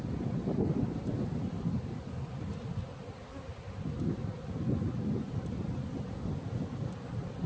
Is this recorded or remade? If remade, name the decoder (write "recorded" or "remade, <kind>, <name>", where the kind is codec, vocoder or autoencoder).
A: recorded